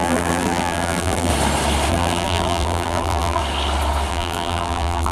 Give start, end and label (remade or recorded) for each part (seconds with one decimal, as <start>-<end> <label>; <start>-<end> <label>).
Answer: 0.0-1.3 remade; 1.3-1.9 recorded; 1.9-3.4 remade; 3.4-4.1 recorded; 4.1-5.1 remade